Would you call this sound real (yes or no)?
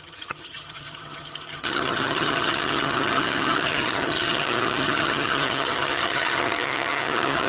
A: no